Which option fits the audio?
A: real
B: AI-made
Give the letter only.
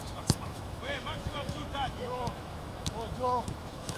B